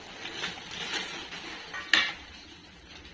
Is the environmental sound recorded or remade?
recorded